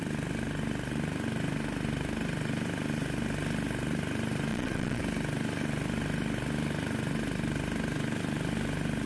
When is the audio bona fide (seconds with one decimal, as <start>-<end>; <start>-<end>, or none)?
0.0-4.5; 5.0-9.1